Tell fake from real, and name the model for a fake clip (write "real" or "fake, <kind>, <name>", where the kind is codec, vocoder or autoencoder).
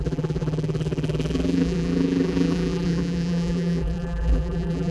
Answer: fake, vocoder, BigVGAN v2